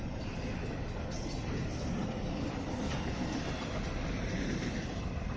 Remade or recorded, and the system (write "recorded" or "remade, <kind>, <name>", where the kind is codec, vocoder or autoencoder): remade, vocoder, BigVGAN v2